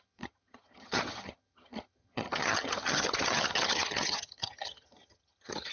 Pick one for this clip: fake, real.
fake